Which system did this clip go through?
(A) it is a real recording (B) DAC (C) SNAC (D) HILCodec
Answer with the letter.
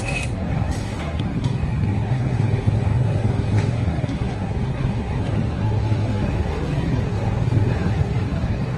C